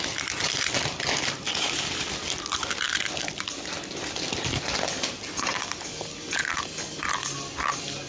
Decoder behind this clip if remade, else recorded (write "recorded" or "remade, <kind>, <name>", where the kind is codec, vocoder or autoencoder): recorded